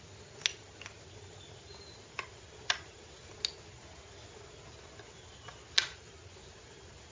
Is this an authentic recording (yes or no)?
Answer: yes